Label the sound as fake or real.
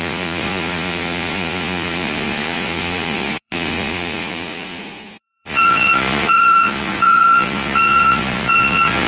fake